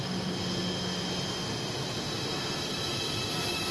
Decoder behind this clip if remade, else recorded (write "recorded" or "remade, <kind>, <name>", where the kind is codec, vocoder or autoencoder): recorded